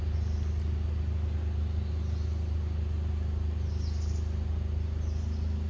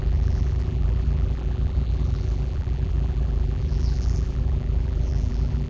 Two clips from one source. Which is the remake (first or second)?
second